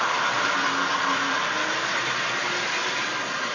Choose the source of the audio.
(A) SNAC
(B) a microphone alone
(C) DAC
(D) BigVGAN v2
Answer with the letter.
B